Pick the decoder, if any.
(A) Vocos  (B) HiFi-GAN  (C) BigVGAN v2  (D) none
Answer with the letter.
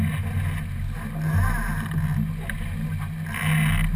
D